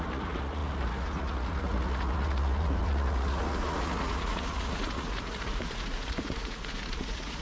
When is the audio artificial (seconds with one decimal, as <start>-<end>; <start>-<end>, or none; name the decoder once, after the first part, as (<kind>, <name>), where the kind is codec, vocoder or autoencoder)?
0.0-7.4 (vocoder, Vocos)